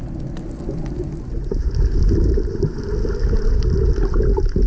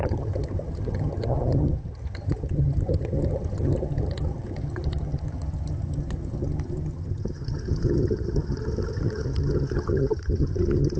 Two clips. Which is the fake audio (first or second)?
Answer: second